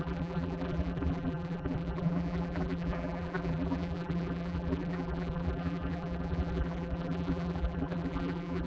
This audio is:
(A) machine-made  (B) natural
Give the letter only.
A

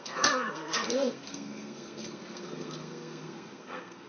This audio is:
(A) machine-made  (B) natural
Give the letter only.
A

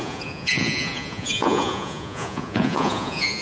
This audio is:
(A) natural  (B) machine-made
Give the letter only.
B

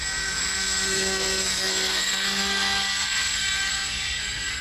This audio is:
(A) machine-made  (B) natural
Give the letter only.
A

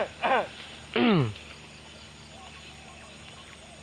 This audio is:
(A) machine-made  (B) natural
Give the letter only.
B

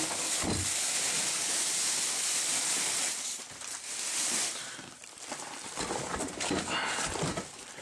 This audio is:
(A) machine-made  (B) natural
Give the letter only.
A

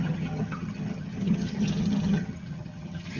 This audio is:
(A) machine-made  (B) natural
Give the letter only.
A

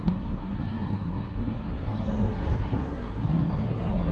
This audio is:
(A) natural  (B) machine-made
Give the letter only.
B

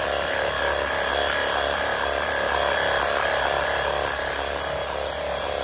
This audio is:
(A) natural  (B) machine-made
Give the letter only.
A